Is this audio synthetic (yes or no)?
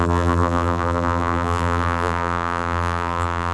yes